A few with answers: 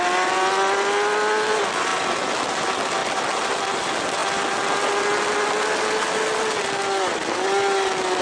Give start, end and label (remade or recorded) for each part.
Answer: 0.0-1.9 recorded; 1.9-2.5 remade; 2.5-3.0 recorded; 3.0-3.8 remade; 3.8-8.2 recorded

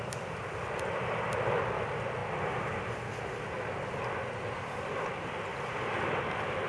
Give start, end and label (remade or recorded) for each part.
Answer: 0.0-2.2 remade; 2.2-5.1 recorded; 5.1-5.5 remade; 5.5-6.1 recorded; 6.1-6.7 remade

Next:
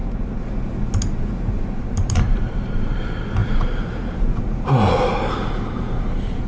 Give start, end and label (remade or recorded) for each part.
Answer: 0.0-1.8 recorded; 1.8-6.5 remade

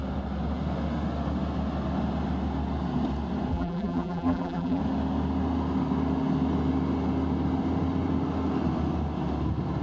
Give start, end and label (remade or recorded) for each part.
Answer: 0.0-3.5 recorded; 3.5-4.8 remade; 4.8-9.8 recorded

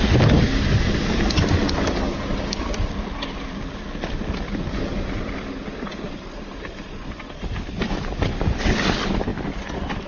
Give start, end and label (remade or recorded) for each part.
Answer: 0.0-10.1 recorded

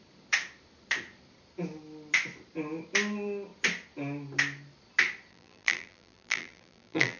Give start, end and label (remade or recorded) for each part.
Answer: 0.0-5.3 recorded; 5.3-7.2 remade

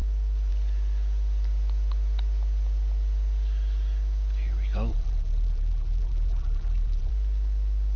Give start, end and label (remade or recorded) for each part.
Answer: 0.0-4.9 recorded; 4.9-7.1 remade; 7.1-8.0 recorded